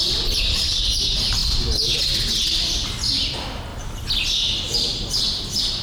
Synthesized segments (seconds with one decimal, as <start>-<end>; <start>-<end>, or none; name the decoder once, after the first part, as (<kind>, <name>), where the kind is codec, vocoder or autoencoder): 1.4-2.0 (vocoder, BigVGAN v2); 3.7-5.1